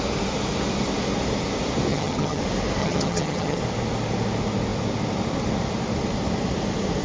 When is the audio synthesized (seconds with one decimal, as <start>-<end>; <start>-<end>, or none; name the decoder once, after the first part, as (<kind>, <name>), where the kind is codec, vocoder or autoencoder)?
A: 1.9-2.4 (vocoder, HiFi-GAN); 2.8-3.6